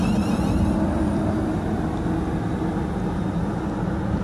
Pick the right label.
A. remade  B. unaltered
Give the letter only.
B